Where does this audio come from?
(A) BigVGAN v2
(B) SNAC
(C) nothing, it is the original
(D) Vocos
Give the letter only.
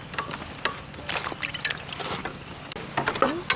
C